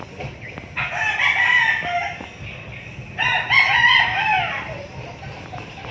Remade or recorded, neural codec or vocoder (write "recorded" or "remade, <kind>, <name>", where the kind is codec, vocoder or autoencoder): recorded